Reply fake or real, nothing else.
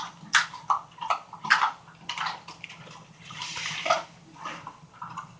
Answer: real